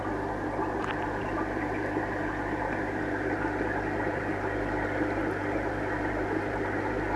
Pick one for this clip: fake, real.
real